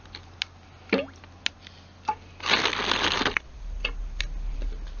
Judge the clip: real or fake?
real